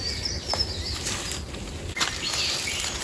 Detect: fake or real real